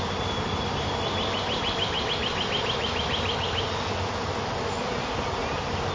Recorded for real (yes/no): yes